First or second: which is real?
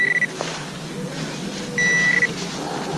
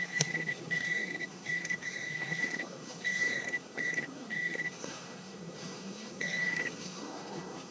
first